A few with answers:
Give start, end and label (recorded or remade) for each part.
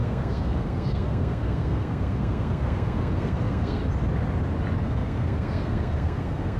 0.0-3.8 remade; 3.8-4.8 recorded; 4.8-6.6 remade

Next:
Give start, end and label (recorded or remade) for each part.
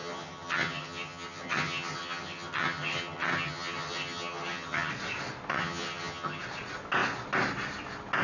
0.0-4.9 remade; 4.9-5.5 recorded; 5.5-6.4 remade; 6.4-8.2 recorded